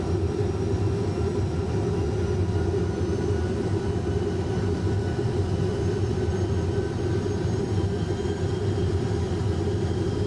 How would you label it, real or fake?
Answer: real